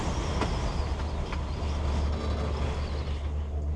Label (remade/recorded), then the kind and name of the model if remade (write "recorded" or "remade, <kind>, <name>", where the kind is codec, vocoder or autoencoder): recorded